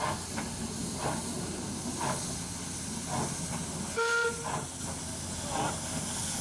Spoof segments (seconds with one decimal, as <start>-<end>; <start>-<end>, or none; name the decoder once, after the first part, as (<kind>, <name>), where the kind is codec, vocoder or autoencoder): 0.8-1.5 (vocoder, BigVGAN v2)